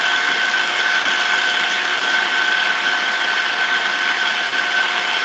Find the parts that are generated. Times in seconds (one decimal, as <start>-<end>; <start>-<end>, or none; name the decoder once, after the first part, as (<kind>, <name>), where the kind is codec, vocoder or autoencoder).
0.0-5.2 (vocoder, BigVGAN v2)

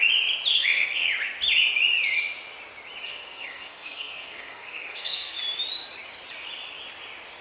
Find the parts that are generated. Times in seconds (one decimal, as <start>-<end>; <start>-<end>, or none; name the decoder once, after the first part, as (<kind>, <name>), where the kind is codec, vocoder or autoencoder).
0.5-1.1 (codec, SNAC); 3.1-5.4

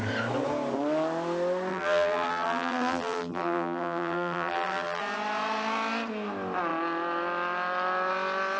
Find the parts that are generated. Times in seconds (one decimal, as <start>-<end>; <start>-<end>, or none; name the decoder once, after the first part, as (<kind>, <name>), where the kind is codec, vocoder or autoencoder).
1.7-5.0 (vocoder, BigVGAN v2)

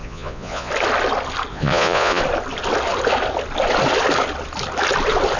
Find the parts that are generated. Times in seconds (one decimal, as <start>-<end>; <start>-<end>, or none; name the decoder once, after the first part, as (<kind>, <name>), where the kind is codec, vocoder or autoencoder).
0.0-0.7 (vocoder, Vocos); 1.5-2.2

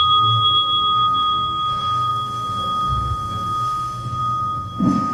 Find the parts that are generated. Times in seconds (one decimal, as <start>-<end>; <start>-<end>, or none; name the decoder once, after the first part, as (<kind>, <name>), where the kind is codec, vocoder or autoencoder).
0.0-5.1 (codec, SNAC)

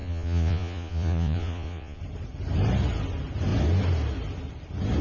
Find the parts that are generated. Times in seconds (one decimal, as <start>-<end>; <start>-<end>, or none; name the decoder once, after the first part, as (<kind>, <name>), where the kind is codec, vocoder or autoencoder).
0.0-2.0 (vocoder, Vocos)

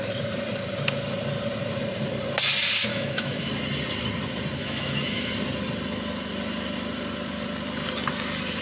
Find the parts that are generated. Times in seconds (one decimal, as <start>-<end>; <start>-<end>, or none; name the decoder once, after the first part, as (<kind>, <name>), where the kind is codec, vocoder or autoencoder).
2.9-3.5 (autoencoder, DAC-VAE); 4.6-5.3